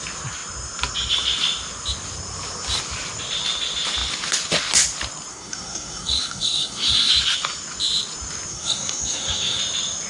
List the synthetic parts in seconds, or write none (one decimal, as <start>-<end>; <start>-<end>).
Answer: 5.3-7.1; 8.5-9.6